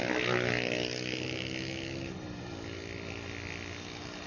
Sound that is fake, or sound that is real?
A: real